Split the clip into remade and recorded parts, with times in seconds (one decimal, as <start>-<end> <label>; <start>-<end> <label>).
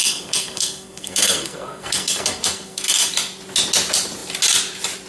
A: 0.0-3.1 remade; 3.1-5.1 recorded